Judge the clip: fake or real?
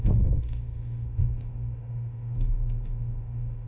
fake